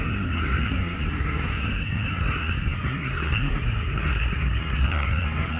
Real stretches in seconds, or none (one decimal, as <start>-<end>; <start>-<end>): none